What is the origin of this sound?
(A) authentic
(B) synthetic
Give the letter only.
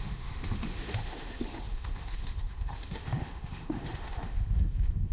B